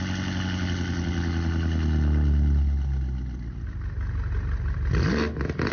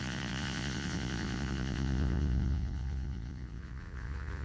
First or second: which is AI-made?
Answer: second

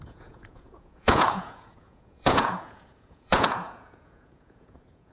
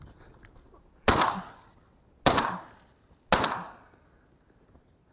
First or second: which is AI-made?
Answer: first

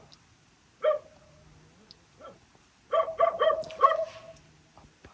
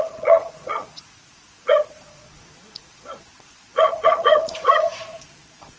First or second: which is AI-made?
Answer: second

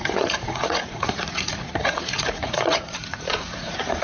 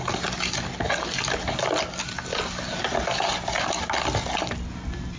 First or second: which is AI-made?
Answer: first